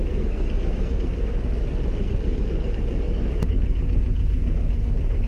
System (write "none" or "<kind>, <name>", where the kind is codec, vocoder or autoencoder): codec, SNAC